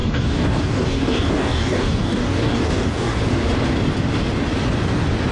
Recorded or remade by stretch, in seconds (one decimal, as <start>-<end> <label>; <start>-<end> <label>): 0.0-3.2 remade; 3.2-5.3 recorded